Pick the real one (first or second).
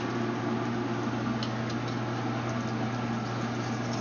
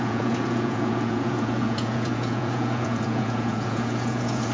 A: first